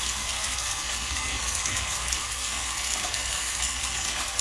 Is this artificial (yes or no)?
yes